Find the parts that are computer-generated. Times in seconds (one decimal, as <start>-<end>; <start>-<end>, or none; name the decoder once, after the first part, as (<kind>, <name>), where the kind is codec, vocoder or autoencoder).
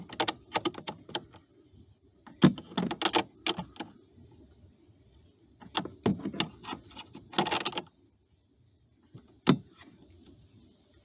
none